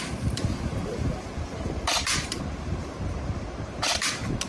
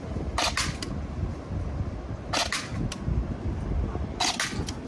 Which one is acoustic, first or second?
second